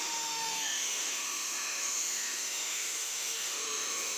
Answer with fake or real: fake